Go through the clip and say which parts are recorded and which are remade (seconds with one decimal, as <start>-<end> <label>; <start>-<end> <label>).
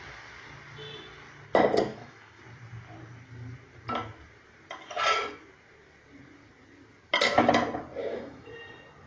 0.0-1.9 recorded; 1.9-2.4 remade; 2.4-8.0 recorded; 8.0-8.5 remade; 8.5-9.1 recorded